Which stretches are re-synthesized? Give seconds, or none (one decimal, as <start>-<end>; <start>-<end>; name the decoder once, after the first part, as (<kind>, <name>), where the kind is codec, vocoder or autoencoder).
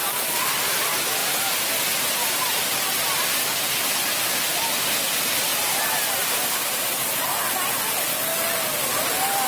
8.3-9.5 (vocoder, BigVGAN v2)